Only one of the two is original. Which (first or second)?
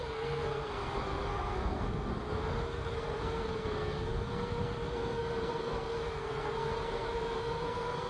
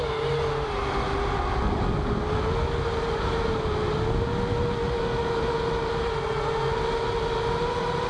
second